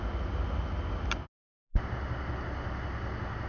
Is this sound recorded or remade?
recorded